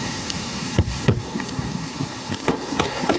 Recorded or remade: remade